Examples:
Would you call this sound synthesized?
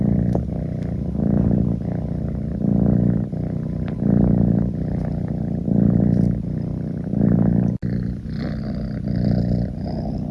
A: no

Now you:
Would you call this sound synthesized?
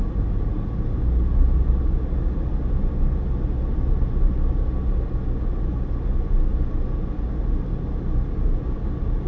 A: no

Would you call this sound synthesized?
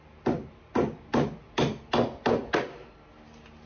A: no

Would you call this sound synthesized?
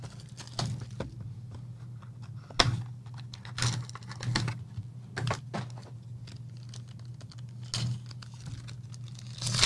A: no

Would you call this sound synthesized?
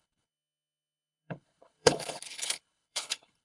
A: yes